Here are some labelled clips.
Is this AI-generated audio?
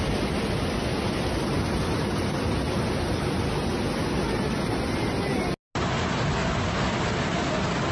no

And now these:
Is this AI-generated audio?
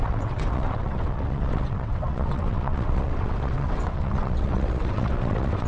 yes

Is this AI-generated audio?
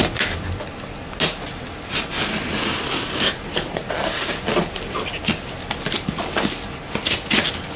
no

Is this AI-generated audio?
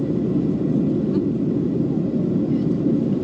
no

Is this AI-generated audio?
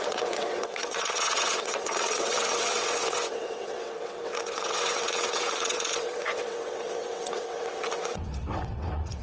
yes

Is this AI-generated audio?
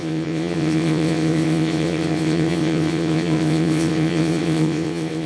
yes